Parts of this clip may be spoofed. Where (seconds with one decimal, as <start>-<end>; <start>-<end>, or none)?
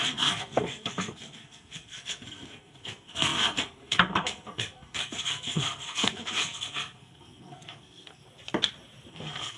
0.0-8.2; 9.1-9.6